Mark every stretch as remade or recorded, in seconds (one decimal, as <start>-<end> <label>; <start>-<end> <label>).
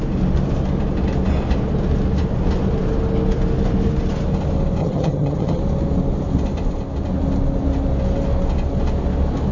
0.0-4.8 recorded; 4.8-5.6 remade; 5.6-9.5 recorded